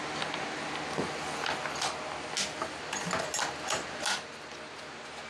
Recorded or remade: recorded